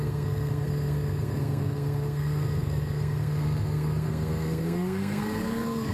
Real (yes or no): no